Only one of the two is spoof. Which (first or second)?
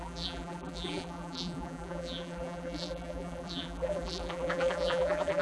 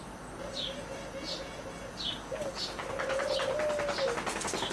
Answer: first